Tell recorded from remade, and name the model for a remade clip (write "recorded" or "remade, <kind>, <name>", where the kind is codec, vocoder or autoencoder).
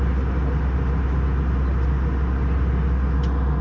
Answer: recorded